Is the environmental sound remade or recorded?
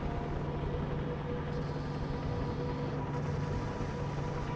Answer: recorded